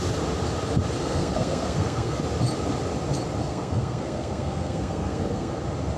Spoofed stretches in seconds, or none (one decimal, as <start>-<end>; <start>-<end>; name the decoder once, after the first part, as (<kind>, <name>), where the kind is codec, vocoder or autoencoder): 1.0-2.2 (codec, SNAC); 3.4-5.6